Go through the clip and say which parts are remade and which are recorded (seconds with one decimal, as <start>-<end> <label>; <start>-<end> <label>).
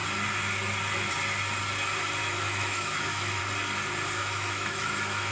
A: 0.0-2.2 recorded; 2.2-3.4 remade; 3.4-4.2 recorded; 4.2-5.3 remade